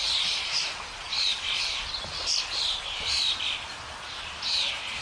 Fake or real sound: real